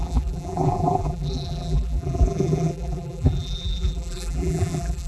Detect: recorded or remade remade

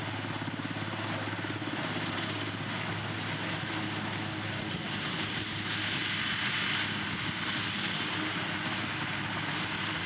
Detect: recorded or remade recorded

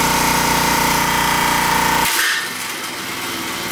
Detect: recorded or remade recorded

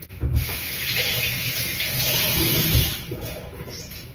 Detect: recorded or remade remade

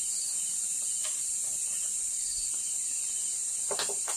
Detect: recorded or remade recorded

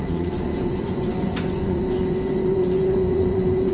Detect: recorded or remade remade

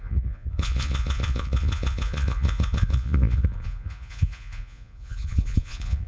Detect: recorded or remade remade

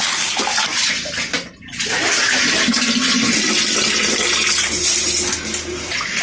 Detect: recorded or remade recorded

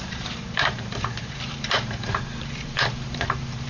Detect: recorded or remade remade